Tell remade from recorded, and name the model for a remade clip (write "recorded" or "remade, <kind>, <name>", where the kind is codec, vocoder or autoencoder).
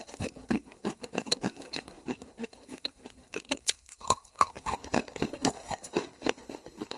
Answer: remade, codec, SNAC